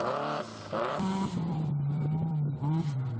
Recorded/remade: remade